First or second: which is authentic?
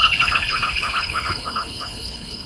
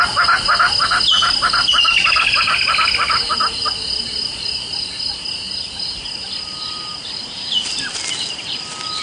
second